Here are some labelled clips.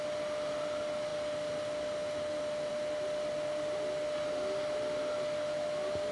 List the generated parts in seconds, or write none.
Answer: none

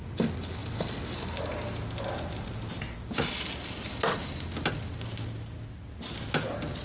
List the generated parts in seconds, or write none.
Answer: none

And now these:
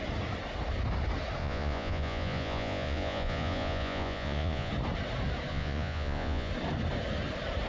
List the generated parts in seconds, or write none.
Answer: 1.4-4.7 (vocoder, Vocos); 5.5-6.5

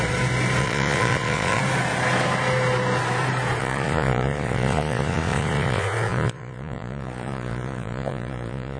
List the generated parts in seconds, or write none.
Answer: 0.6-1.6 (vocoder, Vocos); 3.6-8.8

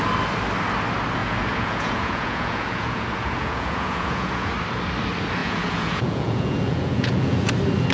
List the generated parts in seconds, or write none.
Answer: 1.2-4.5 (vocoder, Vocos); 5.4-7.5